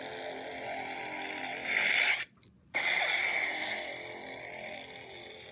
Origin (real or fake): real